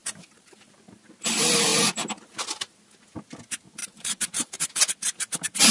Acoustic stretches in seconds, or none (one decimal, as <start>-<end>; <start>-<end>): 0.7-3.8; 4.5-5.7